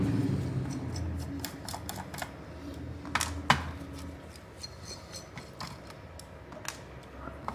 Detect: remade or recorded recorded